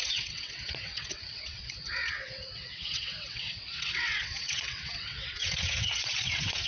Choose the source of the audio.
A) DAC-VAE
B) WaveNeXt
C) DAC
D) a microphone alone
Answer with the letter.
B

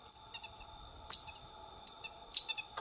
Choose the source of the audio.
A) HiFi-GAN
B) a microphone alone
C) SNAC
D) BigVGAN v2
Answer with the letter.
B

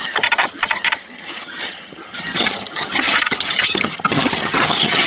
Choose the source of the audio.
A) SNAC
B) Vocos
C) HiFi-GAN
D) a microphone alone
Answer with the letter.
C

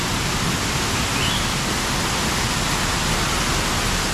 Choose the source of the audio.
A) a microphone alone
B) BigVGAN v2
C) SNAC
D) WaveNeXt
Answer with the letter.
A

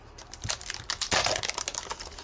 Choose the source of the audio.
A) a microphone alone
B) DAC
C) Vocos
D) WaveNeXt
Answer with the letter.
A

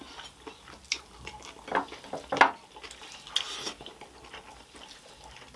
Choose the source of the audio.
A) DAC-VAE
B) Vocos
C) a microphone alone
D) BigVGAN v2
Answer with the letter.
C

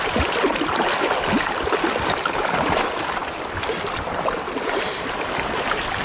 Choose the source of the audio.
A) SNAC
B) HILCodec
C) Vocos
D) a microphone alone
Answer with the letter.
D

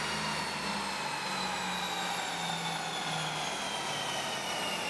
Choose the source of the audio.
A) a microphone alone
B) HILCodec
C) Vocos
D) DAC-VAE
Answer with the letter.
A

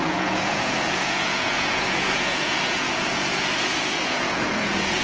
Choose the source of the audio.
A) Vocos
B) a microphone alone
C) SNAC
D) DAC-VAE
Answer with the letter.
A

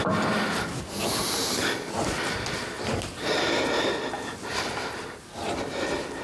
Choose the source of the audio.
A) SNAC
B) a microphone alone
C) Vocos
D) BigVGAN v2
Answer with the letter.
B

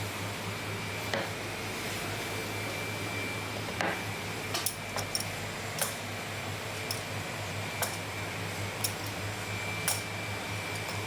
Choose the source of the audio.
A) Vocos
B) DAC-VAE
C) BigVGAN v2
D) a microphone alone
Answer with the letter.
D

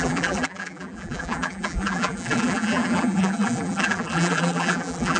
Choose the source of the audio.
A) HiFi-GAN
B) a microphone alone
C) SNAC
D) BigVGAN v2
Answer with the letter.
D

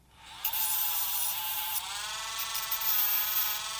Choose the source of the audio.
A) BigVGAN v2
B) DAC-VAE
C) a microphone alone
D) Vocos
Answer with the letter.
A